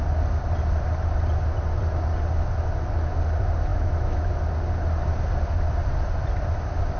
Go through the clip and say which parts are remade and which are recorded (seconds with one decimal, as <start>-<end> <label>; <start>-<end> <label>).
0.0-3.7 recorded; 3.7-4.3 remade; 4.3-7.0 recorded